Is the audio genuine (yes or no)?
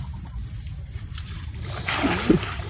yes